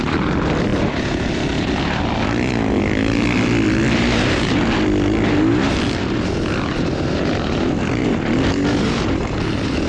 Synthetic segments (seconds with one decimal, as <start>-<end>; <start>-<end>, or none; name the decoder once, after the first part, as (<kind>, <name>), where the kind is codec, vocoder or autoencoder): none

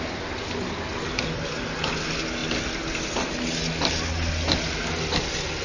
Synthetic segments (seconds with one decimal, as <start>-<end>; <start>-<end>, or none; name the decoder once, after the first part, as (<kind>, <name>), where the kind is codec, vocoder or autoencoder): none